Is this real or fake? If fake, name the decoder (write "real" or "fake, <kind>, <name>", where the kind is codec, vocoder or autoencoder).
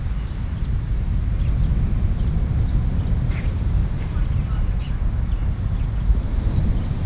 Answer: real